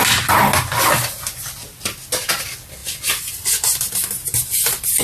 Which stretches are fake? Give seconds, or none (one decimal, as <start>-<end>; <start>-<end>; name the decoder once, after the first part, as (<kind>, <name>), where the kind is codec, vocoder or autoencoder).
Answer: none